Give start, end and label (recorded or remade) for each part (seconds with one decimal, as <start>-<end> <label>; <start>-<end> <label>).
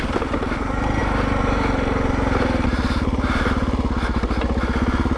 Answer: 0.0-5.2 recorded